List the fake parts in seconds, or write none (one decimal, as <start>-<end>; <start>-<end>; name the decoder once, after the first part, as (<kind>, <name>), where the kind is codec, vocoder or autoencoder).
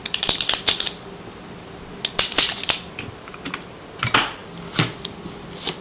none